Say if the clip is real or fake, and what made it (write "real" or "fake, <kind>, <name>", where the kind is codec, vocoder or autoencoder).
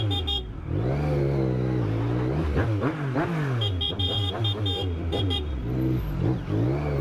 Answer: real